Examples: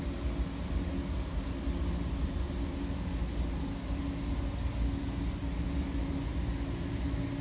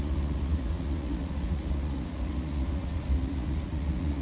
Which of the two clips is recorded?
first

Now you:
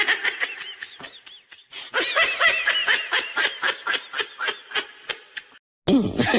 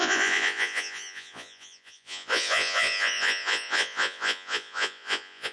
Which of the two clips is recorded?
first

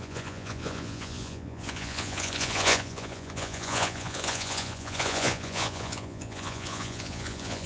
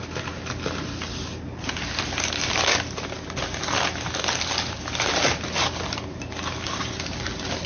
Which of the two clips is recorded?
second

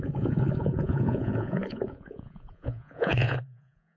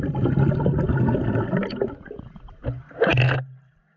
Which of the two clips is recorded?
second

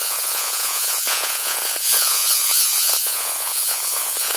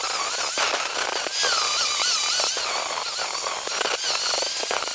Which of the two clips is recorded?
second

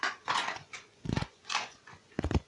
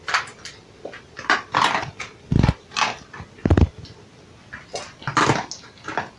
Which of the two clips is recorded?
second